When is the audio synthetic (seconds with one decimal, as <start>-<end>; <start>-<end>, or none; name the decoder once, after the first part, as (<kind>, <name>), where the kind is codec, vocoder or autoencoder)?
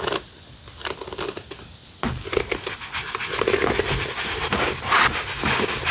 none